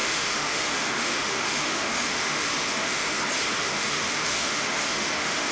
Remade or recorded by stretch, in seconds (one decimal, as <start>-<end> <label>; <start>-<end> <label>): 0.0-3.2 remade; 3.2-3.6 recorded; 3.6-5.5 remade